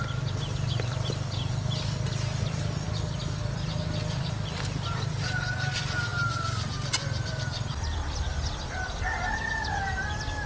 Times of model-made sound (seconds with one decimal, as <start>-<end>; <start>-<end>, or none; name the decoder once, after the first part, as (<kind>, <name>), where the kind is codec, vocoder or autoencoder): 6.1-8.5 (vocoder, BigVGAN v2)